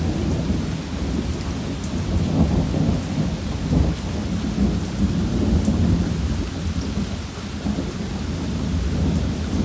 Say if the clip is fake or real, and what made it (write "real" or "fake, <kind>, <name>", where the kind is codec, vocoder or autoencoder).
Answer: real